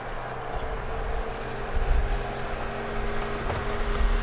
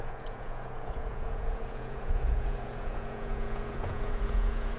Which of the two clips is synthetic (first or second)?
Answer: second